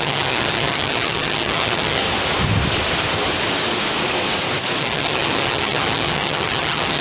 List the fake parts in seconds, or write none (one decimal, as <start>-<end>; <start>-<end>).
0.0-2.0; 4.8-7.0